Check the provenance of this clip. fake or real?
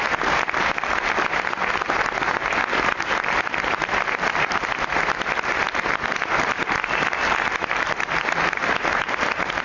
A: real